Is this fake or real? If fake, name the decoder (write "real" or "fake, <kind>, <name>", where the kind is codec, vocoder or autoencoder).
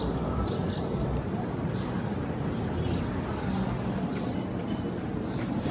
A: real